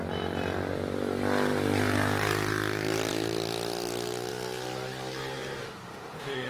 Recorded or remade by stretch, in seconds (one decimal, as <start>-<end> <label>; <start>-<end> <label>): 0.0-5.6 recorded; 5.6-6.5 remade